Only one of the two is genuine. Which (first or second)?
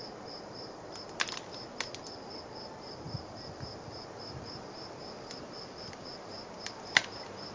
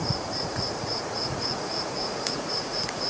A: first